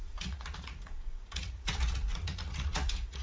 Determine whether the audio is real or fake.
fake